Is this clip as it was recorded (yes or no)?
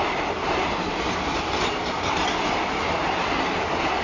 yes